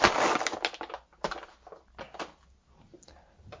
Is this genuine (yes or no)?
yes